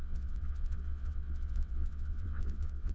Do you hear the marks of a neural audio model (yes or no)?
yes